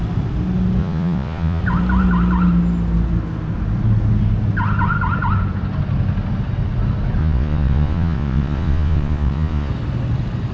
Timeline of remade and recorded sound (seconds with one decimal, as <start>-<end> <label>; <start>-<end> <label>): 0.0-0.8 recorded; 0.8-1.6 remade; 1.6-7.2 recorded; 7.2-9.7 remade; 9.7-10.5 recorded